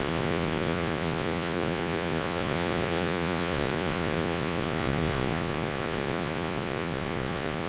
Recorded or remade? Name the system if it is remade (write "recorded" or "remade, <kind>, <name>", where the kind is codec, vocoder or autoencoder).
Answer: remade, vocoder, Vocos